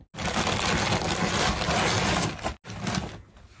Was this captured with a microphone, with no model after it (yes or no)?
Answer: yes